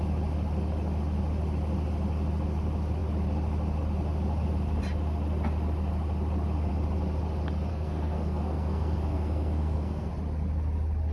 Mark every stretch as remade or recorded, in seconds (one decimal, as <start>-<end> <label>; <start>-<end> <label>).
0.0-7.7 recorded; 7.7-10.1 remade; 10.1-11.1 recorded